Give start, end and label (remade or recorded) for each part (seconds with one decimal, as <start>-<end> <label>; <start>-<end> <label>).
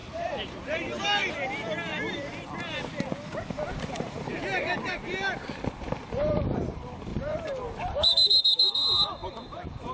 0.0-2.8 remade; 2.8-3.4 recorded; 3.4-9.9 remade